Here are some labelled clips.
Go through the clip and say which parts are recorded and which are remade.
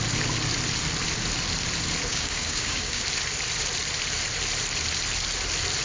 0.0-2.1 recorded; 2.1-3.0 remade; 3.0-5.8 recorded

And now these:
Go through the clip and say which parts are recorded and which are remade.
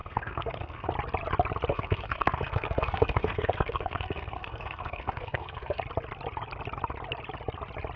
0.0-0.9 remade; 0.9-1.7 recorded; 1.7-5.8 remade; 5.8-8.0 recorded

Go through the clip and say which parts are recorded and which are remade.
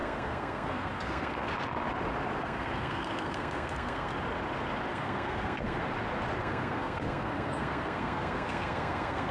0.0-1.5 remade; 1.5-2.4 recorded; 2.4-4.1 remade; 4.1-4.9 recorded; 4.9-5.8 remade; 5.8-6.4 recorded; 6.4-9.3 remade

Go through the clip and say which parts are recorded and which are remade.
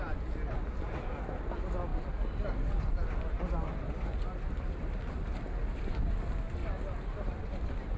0.0-8.0 recorded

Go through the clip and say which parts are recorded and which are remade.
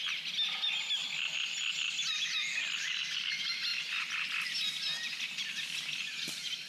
0.0-6.7 recorded